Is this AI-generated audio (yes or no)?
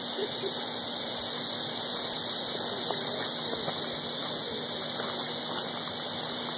no